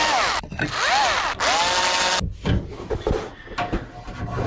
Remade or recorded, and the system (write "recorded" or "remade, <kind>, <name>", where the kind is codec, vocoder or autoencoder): recorded